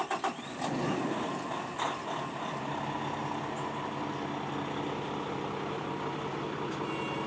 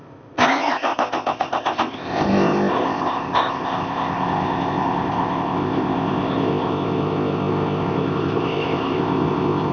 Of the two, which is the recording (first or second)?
first